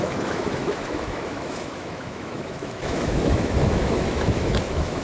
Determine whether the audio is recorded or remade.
remade